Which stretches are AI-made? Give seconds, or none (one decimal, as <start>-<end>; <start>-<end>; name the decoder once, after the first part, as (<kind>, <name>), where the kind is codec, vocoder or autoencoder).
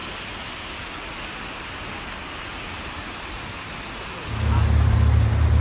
none